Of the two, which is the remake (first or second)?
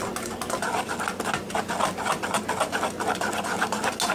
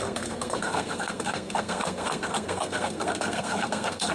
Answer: second